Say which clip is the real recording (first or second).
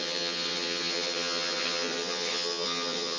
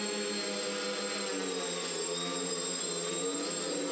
second